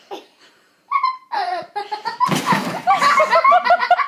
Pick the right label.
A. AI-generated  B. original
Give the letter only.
B